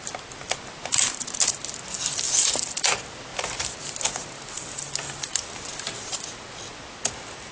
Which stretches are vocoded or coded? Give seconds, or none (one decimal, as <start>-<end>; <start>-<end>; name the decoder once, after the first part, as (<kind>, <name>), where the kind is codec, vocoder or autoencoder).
none